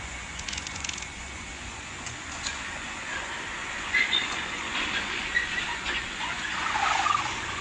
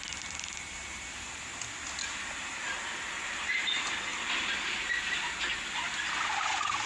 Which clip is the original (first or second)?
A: second